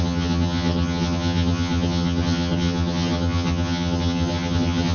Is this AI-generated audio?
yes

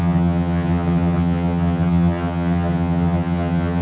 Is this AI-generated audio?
yes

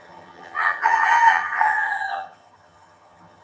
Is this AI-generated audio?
yes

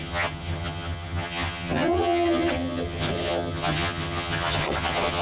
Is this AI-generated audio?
yes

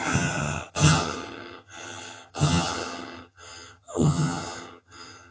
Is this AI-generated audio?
yes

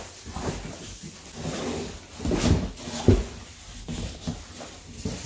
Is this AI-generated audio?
no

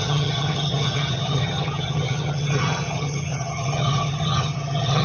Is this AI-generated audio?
yes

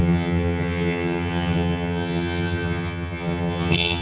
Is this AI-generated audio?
yes